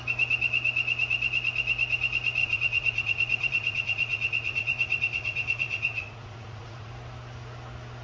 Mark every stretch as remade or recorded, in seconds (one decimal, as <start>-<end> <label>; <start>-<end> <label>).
0.0-2.4 recorded; 2.4-6.9 remade; 6.9-8.0 recorded